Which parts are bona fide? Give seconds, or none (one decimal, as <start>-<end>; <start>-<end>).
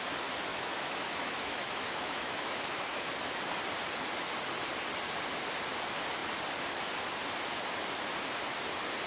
0.0-0.5; 3.1-9.1